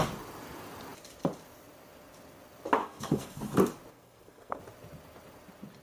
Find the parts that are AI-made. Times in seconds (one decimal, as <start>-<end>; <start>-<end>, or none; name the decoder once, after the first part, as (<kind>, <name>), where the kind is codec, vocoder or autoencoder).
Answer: 2.8-3.4 (codec, SNAC); 3.9-4.6